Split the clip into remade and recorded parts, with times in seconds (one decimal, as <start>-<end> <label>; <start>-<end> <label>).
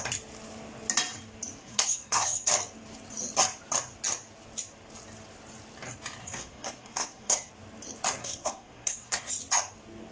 0.0-1.6 recorded; 1.6-2.5 remade; 2.5-6.2 recorded; 6.2-7.5 remade; 7.5-8.2 recorded; 8.2-9.3 remade; 9.3-10.1 recorded